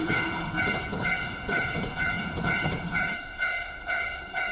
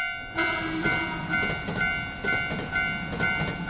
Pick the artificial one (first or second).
first